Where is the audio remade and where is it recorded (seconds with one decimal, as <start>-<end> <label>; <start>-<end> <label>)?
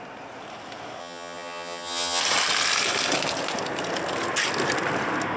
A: 0.0-1.0 recorded; 1.0-2.2 remade; 2.2-5.4 recorded